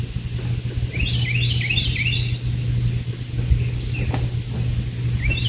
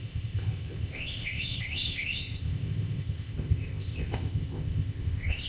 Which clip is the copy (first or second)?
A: second